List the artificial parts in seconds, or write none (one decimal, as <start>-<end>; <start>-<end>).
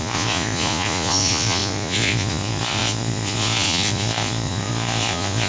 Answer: 0.0-5.5